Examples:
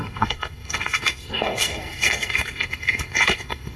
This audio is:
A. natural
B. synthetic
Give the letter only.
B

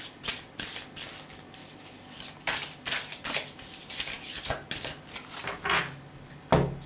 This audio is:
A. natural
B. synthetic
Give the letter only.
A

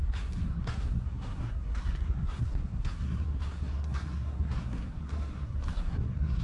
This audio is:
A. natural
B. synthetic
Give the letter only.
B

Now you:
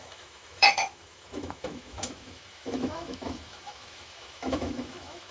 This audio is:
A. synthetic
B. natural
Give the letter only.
A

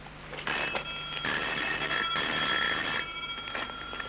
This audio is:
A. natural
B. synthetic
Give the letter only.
A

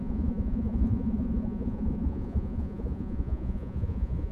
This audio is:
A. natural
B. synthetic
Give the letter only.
B